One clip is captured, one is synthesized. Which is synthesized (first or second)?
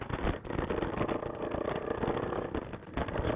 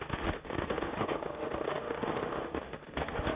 second